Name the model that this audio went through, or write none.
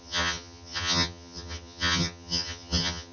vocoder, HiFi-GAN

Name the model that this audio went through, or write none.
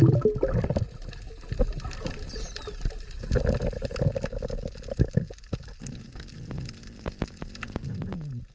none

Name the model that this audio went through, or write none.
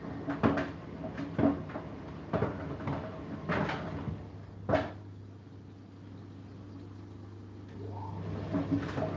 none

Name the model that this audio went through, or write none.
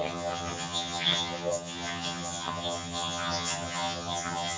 vocoder, HiFi-GAN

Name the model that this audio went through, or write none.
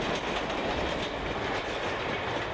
none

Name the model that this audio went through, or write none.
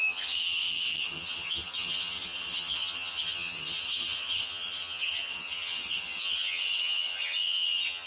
vocoder, HiFi-GAN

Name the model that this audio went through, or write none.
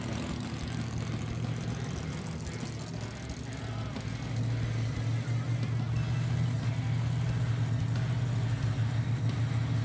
none